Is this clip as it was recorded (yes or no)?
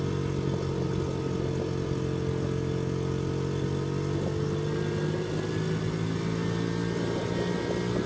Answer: yes